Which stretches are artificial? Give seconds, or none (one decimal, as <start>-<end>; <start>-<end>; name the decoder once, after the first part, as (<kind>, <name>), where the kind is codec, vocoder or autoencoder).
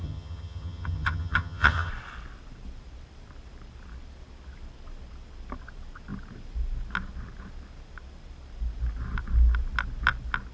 0.0-1.9 (vocoder, HiFi-GAN)